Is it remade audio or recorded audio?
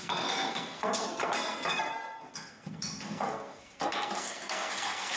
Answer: remade